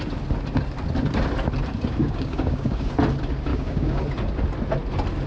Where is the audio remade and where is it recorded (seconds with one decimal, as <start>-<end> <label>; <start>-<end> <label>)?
0.0-2.0 recorded; 2.0-2.9 remade; 2.9-3.5 recorded; 3.5-4.0 remade; 4.0-5.3 recorded

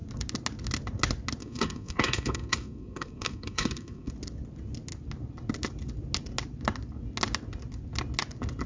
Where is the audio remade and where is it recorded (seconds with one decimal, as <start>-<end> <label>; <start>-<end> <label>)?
0.0-1.4 recorded; 1.4-4.1 remade; 4.1-8.7 recorded

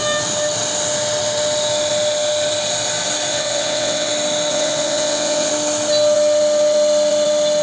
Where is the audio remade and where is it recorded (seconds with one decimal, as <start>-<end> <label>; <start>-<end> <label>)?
0.0-3.3 recorded; 3.3-4.1 remade; 4.1-4.5 recorded; 4.5-5.5 remade; 5.5-7.6 recorded

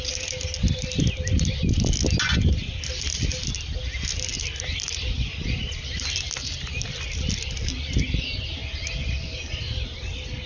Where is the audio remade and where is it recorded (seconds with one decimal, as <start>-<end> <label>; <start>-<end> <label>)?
0.0-10.5 recorded

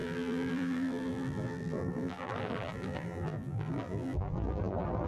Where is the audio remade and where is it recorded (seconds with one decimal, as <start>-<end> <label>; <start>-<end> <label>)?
0.0-5.1 remade

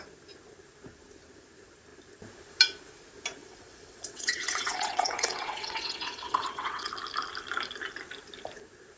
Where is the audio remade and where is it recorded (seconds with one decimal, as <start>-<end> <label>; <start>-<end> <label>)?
0.0-3.4 recorded; 3.4-6.9 remade; 6.9-9.0 recorded